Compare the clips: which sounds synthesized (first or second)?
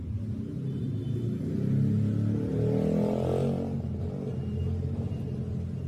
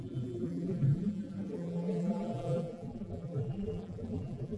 second